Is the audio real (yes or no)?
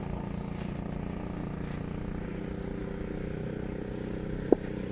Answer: yes